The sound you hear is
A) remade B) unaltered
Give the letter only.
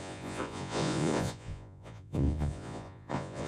A